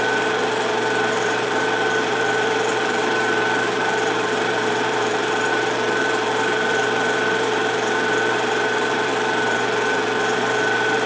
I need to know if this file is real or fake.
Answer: fake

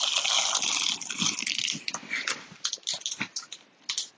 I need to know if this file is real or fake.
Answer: real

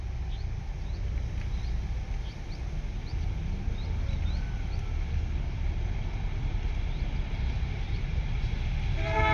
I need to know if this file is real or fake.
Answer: real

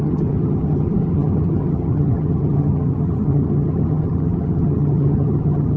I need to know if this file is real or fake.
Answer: fake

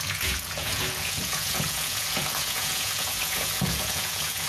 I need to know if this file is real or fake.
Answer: fake